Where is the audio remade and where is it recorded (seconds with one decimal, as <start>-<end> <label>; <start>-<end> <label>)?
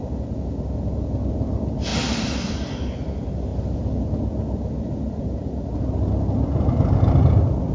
0.0-7.7 recorded